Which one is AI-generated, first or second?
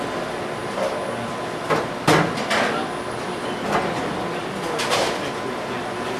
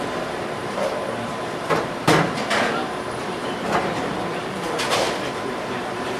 second